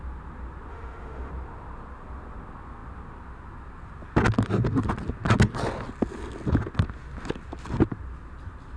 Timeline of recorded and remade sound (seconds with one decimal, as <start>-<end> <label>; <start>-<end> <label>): 0.0-0.7 recorded; 0.7-1.3 remade; 1.3-8.8 recorded